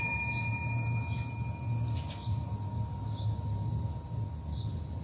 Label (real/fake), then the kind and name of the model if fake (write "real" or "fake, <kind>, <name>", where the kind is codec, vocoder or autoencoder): real